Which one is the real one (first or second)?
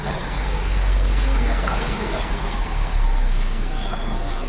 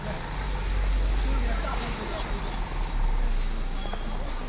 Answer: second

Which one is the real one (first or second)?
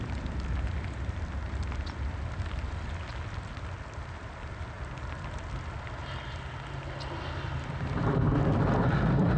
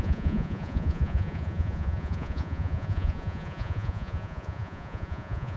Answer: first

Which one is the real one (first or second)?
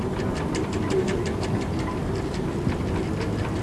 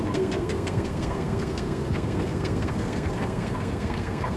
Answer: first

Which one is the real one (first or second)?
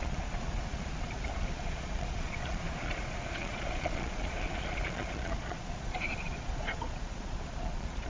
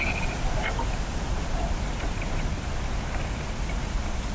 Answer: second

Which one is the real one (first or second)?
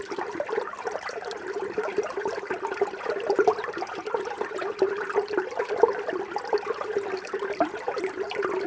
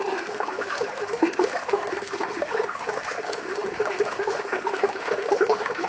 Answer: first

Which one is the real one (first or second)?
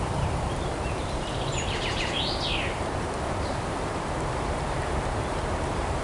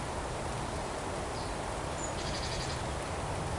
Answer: second